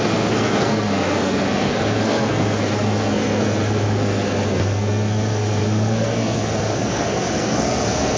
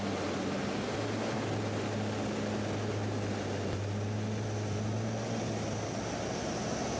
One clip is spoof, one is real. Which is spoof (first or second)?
first